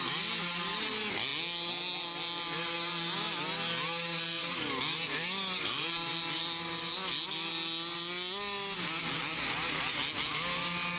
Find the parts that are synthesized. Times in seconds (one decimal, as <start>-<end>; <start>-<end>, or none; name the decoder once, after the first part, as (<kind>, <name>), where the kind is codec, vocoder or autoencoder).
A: none